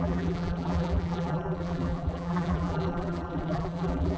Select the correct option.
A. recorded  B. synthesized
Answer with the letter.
B